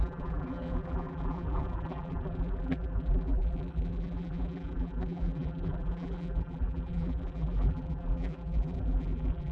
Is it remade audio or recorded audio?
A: remade